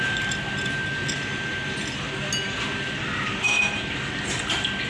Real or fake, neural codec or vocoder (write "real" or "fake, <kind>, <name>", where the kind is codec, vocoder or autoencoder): real